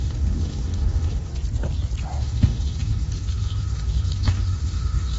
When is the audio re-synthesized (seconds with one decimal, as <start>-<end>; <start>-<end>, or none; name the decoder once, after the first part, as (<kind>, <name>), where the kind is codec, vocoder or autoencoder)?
0.0-1.3 (autoencoder, DAC-VAE); 2.2-5.2